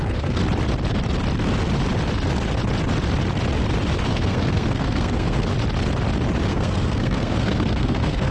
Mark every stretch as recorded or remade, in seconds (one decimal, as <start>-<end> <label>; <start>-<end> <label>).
0.0-0.4 remade; 0.4-4.1 recorded; 4.1-5.5 remade; 5.5-6.5 recorded; 6.5-8.3 remade

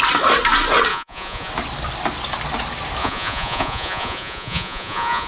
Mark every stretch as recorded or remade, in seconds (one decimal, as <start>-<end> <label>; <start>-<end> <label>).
0.0-0.9 recorded; 0.9-1.5 remade; 1.5-3.0 recorded; 3.0-5.3 remade